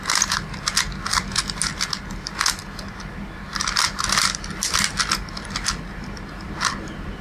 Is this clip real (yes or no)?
yes